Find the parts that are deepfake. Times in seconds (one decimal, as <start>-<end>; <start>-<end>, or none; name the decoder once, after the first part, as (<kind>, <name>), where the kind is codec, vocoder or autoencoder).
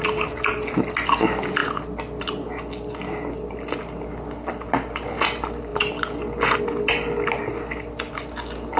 none